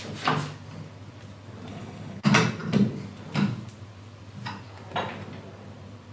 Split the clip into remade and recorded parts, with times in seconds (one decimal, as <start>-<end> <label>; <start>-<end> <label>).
0.0-1.7 recorded; 1.7-2.2 remade; 2.2-6.1 recorded